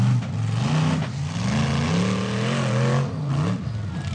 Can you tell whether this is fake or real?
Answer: real